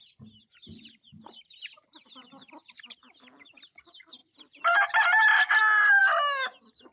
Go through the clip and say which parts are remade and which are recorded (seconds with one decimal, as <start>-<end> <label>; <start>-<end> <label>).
0.0-6.9 recorded